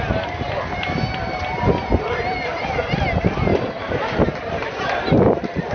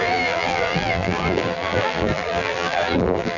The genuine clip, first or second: first